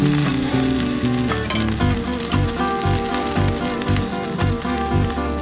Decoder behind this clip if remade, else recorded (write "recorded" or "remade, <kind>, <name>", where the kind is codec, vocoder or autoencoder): recorded